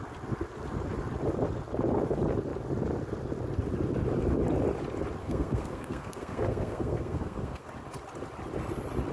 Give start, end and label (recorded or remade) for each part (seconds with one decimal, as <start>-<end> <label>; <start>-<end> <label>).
0.0-5.2 recorded; 5.2-7.7 remade; 7.7-9.1 recorded